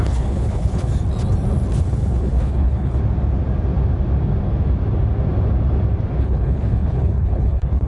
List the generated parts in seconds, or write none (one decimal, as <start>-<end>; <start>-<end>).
0.0-0.9; 1.8-3.0; 6.2-7.9